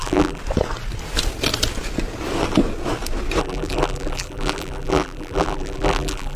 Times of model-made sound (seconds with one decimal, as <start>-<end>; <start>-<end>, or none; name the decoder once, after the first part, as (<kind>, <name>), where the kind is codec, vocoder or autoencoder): 0.0-0.4 (vocoder, BigVGAN v2); 3.4-6.4